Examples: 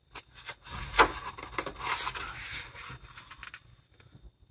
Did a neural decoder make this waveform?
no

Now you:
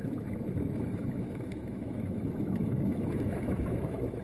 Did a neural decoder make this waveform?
yes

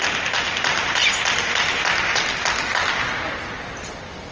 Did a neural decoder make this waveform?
no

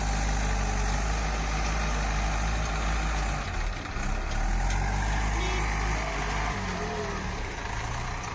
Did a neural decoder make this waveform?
no